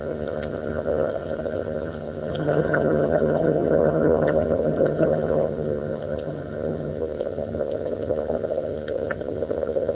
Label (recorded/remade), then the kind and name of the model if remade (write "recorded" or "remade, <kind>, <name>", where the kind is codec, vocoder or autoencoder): remade, vocoder, HiFi-GAN